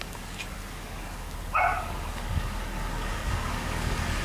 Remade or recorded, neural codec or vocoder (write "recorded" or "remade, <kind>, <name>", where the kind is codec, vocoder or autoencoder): remade, codec, DAC